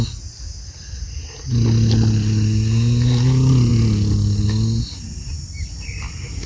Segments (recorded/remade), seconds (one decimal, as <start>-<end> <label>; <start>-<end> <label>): 0.0-6.5 recorded